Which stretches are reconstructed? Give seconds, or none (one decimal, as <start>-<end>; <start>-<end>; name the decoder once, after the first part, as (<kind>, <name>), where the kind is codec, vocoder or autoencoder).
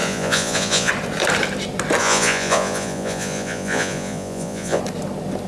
0.0-0.9 (vocoder, Vocos); 2.0-4.8